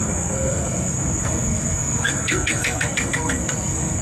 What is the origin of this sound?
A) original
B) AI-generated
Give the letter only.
B